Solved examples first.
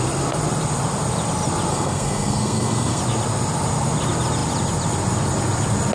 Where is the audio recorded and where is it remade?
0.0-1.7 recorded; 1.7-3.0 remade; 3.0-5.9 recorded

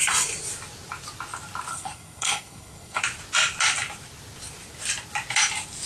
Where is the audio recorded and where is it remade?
0.0-1.7 recorded; 1.7-3.0 remade; 3.0-5.9 recorded

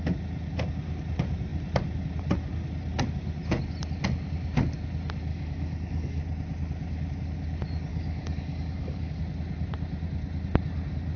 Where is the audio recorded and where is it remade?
0.0-5.3 recorded; 5.3-6.2 remade; 6.2-7.9 recorded; 7.9-9.2 remade; 9.2-11.2 recorded

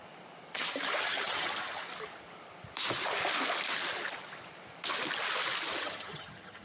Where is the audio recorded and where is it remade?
0.0-1.0 recorded; 1.0-1.8 remade; 1.8-5.8 recorded; 5.8-6.6 remade

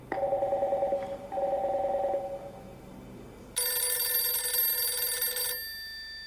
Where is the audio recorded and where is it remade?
0.0-6.3 recorded

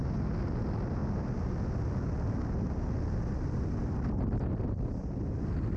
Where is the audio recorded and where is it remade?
0.0-5.8 recorded

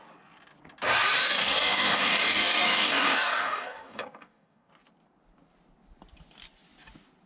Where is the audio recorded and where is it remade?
0.0-1.2 recorded; 1.2-4.7 remade; 4.7-7.3 recorded

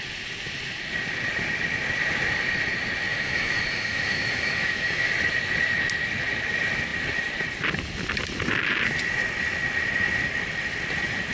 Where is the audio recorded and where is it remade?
0.0-3.1 recorded; 3.1-5.1 remade; 5.1-11.3 recorded